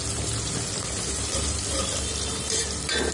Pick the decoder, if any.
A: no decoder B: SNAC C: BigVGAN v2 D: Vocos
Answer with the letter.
C